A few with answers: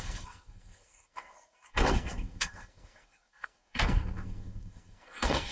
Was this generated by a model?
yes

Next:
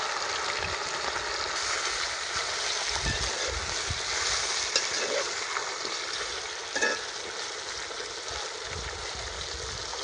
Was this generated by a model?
no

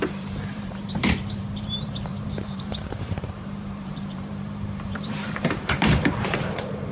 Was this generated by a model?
yes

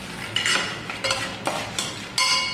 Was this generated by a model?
no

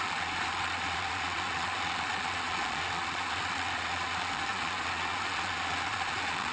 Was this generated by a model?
yes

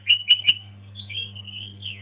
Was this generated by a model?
yes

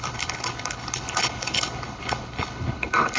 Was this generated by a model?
yes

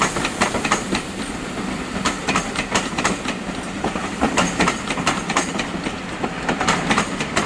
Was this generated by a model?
no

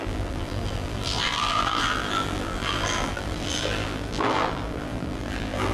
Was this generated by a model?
yes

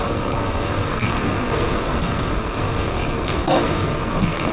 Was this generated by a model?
yes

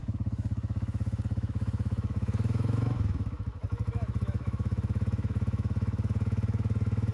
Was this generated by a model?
yes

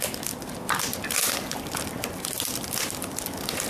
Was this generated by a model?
no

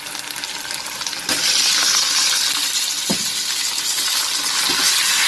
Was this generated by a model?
no